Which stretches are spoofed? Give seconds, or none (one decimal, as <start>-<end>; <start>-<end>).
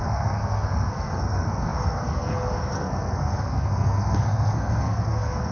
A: 0.0-5.5